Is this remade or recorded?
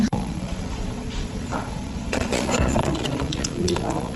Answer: remade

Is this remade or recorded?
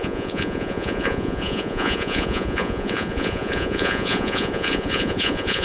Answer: remade